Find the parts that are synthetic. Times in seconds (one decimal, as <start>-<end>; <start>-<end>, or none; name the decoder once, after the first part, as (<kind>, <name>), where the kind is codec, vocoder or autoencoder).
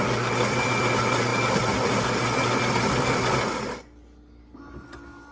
none